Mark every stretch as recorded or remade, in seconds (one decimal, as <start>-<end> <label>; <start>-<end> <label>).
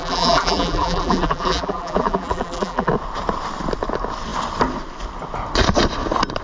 0.0-2.9 remade; 2.9-6.4 recorded